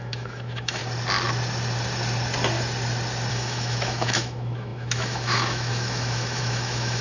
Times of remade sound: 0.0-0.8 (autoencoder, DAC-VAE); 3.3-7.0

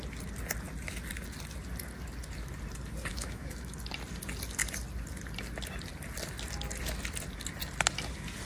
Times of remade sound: 3.1-3.7 (autoencoder, DAC-VAE)